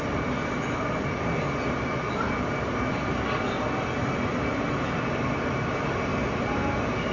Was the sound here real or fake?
real